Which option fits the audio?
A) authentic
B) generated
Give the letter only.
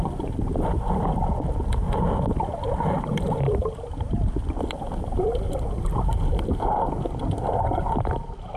A